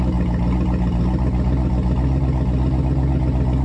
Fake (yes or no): no